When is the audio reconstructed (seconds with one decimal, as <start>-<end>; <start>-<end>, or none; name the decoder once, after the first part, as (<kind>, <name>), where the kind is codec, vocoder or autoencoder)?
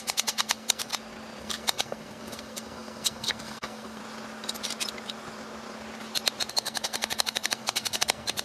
0.0-0.9 (codec, SNAC); 1.4-4.0; 6.5-8.4